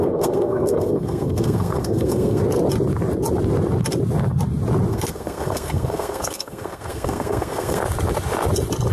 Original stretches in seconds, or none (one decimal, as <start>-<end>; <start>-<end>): 2.4-4.9; 7.8-8.9